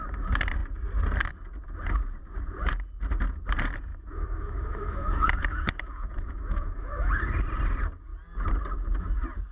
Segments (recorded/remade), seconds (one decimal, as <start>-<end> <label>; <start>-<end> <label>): 0.0-3.9 recorded; 3.9-7.1 remade; 7.1-9.5 recorded